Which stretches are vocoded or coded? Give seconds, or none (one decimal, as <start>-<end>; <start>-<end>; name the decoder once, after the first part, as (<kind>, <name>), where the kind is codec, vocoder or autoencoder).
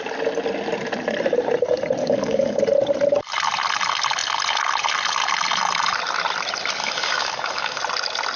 2.0-2.6 (codec, DAC); 6.8-7.8